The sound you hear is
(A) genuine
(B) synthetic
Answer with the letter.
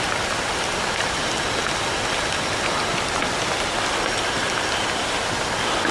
A